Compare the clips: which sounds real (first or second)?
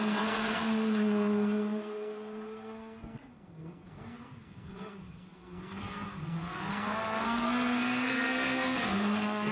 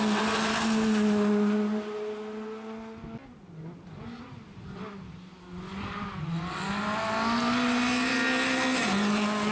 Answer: second